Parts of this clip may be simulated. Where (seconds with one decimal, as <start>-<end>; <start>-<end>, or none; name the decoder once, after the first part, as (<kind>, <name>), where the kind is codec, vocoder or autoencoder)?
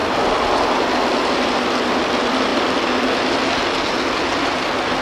none